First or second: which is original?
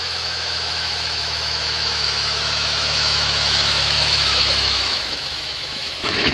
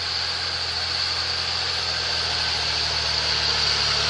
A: second